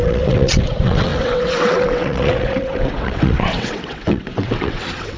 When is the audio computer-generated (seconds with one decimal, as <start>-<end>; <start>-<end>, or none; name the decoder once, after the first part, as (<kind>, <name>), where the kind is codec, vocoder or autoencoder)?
0.0-5.2 (vocoder, WaveNeXt)